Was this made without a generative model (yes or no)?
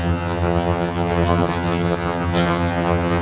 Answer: no